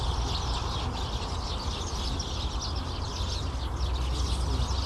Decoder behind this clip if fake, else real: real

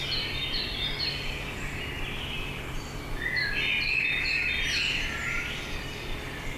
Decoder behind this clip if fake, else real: real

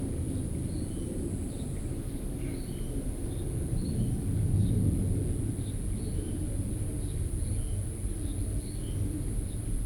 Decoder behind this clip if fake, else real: real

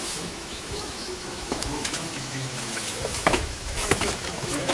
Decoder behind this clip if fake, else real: fake, autoencoder, DAC-VAE